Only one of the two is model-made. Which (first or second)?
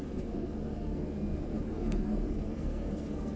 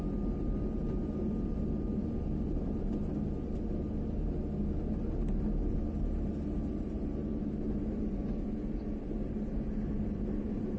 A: first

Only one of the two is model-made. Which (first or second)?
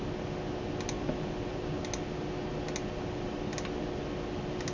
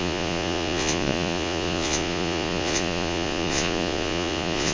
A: second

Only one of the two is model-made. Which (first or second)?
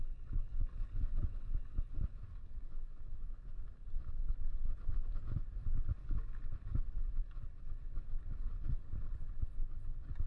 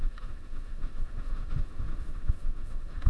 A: second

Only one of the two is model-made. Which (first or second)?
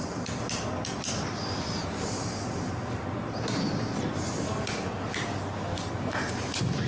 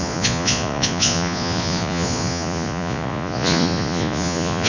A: second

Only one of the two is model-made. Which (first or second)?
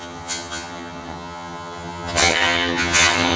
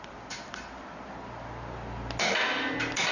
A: first